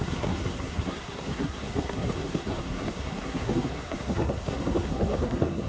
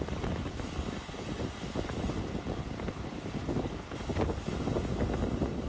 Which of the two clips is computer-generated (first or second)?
first